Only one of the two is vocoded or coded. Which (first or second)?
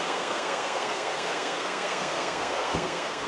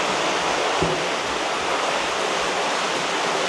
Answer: first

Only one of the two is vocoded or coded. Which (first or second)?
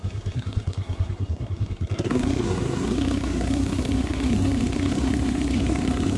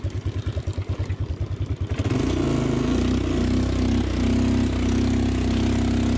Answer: first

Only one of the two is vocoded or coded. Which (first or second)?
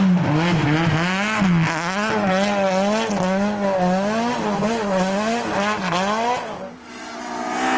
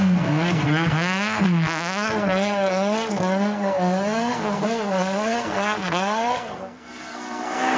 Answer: second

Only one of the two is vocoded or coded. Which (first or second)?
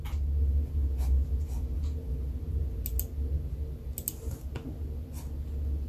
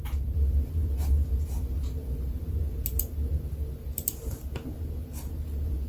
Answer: second